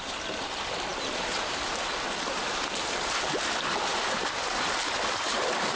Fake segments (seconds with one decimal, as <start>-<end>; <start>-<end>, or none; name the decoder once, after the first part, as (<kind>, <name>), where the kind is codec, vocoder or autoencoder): none